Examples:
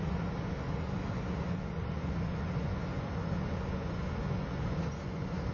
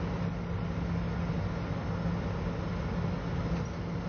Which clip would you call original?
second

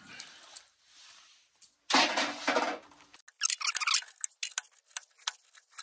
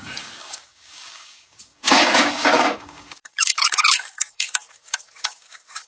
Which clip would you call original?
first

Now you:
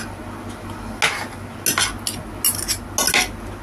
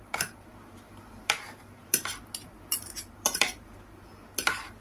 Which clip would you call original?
first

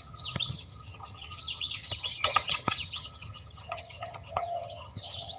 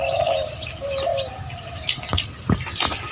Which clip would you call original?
second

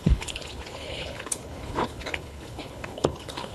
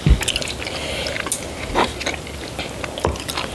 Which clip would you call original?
second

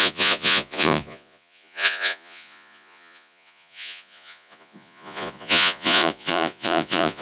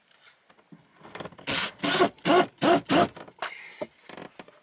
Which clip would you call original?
second